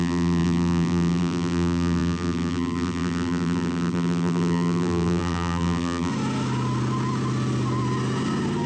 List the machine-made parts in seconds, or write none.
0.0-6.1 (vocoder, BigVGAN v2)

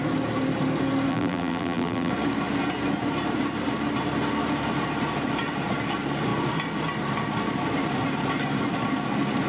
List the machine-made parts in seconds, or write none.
1.1-2.1 (vocoder, BigVGAN v2)

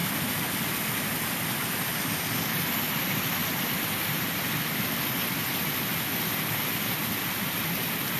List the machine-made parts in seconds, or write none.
3.4-4.5 (vocoder, BigVGAN v2)

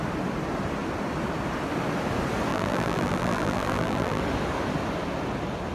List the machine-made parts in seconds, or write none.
2.5-4.2 (vocoder, BigVGAN v2)